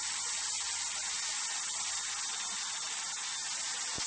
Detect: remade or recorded recorded